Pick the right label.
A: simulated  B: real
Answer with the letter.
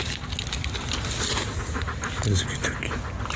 B